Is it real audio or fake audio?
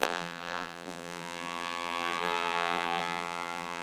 fake